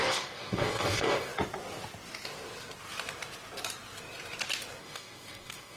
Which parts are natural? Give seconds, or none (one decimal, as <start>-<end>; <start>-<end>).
1.3-4.8